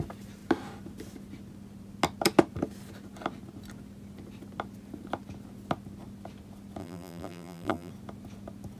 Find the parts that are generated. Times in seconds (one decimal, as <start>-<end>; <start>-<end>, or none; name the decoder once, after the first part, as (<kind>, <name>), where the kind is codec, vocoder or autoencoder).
6.8-7.9 (vocoder, BigVGAN v2)